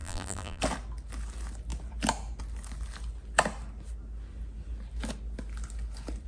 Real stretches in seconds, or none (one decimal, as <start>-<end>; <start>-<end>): 0.6-6.3